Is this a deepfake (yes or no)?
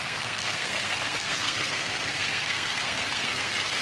yes